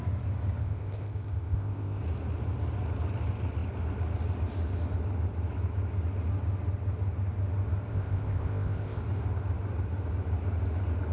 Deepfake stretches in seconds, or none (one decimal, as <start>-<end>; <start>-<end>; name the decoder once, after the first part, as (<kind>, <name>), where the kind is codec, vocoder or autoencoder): 0.6-2.0 (codec, ZipCodec); 7.9-9.0